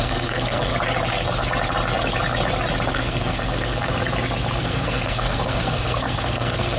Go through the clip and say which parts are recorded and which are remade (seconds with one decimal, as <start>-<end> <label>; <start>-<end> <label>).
0.0-0.7 remade; 0.7-2.9 recorded; 2.9-3.9 remade; 3.9-4.6 recorded; 4.6-6.8 remade